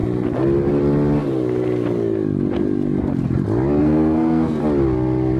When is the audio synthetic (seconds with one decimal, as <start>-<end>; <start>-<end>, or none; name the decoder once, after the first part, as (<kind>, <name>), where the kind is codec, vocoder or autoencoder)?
3.8-4.6 (codec, SNAC)